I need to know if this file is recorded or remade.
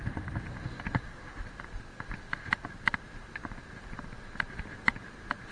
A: recorded